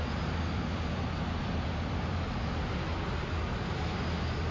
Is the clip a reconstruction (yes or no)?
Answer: no